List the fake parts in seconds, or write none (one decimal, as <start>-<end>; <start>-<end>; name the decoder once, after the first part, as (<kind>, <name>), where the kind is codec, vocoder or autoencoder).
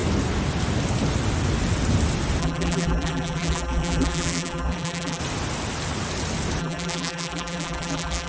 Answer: 2.4-5.2 (vocoder, BigVGAN v2); 6.6-8.3